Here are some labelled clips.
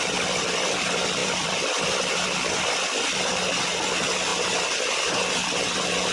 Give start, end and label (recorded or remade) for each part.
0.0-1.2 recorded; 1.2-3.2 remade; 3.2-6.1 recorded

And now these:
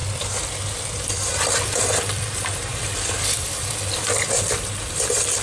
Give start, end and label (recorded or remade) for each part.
0.0-5.4 remade

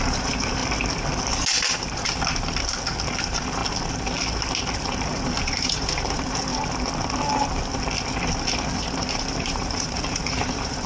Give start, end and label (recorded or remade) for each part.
0.0-0.6 remade; 0.6-3.2 recorded; 3.2-3.6 remade; 3.6-5.4 recorded; 5.4-6.5 remade; 6.5-9.2 recorded; 9.2-10.9 remade

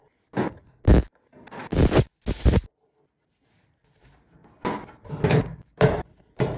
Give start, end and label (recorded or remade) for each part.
0.0-4.0 recorded; 4.0-4.4 remade; 4.4-5.4 recorded; 5.4-6.6 remade

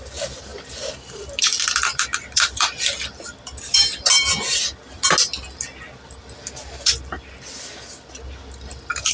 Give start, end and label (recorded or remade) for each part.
0.0-4.3 remade; 4.3-8.1 recorded; 8.1-9.1 remade